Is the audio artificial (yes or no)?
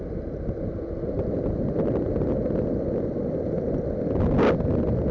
no